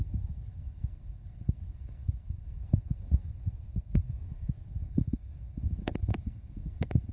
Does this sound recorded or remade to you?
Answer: remade